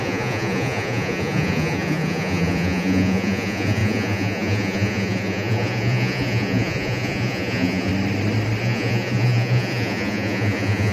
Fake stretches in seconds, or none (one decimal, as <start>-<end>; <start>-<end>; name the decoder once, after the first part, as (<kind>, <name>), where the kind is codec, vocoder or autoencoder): 0.0-7.9 (vocoder, Vocos); 8.6-10.9